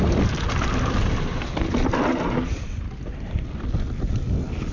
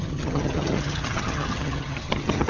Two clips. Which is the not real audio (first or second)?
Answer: second